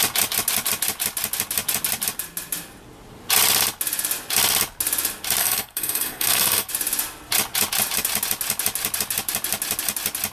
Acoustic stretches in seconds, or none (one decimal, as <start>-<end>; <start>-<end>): 0.0-5.4; 6.7-10.3